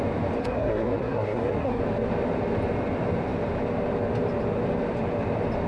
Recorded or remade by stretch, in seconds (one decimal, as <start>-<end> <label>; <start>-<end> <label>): 0.0-0.4 recorded; 0.4-1.8 remade; 1.8-5.7 recorded